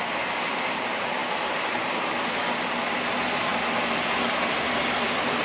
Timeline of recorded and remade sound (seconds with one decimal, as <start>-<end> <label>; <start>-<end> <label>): 0.0-5.4 recorded